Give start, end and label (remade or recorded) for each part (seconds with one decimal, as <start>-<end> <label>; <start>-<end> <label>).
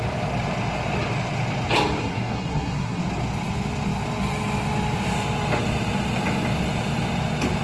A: 0.0-2.0 recorded; 2.0-3.0 remade; 3.0-7.6 recorded